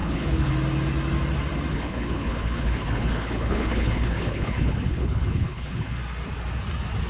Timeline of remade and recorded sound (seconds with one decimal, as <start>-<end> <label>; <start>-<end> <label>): 0.0-0.5 remade; 0.5-1.7 recorded; 1.7-6.0 remade; 6.0-7.1 recorded